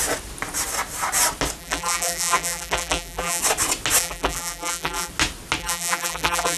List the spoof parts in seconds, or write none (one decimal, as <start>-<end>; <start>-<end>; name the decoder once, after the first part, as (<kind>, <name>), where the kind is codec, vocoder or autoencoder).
1.6-3.4 (vocoder, BigVGAN v2); 4.0-5.1; 5.6-6.6